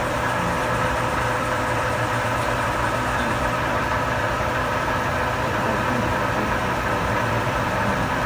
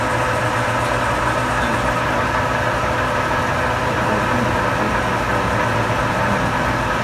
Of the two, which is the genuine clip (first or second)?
second